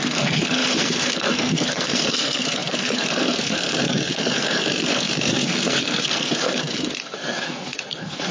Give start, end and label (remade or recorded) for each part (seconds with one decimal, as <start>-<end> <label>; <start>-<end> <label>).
0.0-8.3 remade